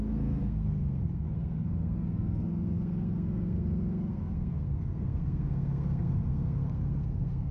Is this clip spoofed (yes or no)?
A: yes